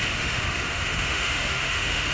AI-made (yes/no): yes